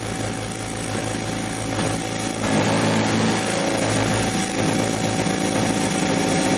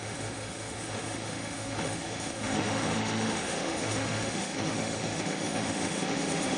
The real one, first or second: first